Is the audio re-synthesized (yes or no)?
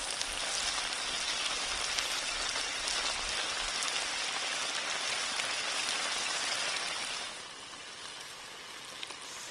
no